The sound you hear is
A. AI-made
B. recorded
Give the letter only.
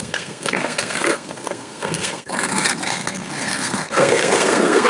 A